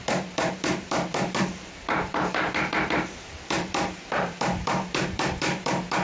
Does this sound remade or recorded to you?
remade